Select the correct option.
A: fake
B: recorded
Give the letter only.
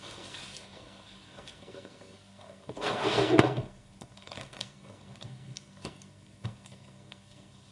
A